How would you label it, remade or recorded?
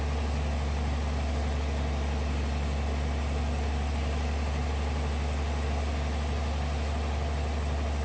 recorded